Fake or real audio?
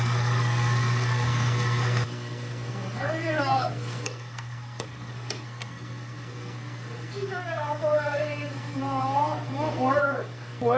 fake